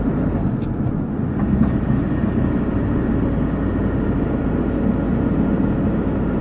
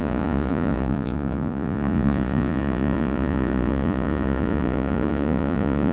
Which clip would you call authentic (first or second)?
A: first